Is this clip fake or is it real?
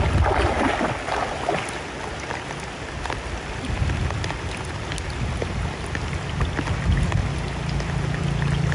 real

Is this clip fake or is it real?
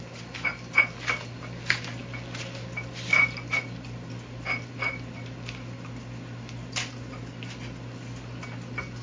real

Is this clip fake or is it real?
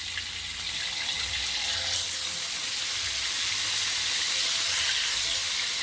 real